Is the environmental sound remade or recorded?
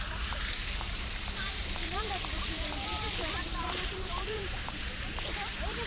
remade